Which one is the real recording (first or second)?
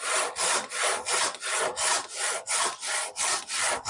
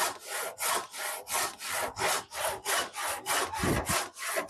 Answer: second